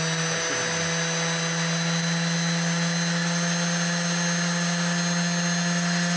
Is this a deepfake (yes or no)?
no